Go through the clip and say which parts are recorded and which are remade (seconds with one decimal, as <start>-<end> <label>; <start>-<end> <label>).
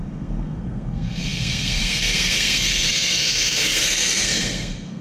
0.0-5.0 remade